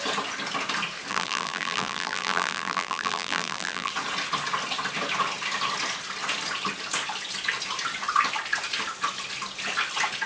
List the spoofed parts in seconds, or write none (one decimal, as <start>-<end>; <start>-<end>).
1.1-3.9